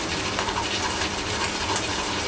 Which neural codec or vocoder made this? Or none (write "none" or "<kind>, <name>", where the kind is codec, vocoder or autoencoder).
none